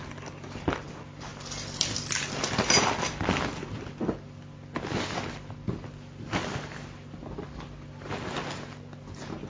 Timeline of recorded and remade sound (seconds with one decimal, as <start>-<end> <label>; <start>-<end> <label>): 0.0-9.5 recorded